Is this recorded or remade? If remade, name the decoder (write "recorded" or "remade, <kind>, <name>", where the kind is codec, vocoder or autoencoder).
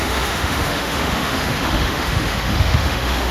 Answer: remade, autoencoder, DAC-VAE